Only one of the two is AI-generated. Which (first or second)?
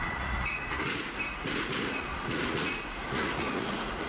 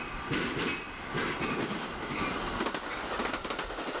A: first